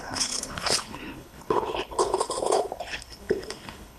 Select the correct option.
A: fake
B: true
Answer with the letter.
A